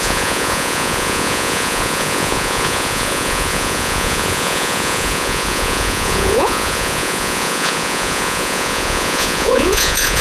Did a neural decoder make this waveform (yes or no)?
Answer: yes